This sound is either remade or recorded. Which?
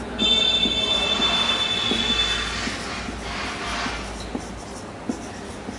recorded